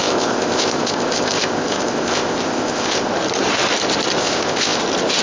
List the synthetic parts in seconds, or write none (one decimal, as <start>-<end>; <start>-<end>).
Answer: 0.0-3.1; 4.2-4.8